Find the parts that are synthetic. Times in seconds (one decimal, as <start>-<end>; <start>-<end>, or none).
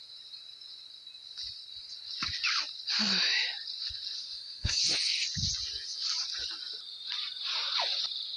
4.2-4.8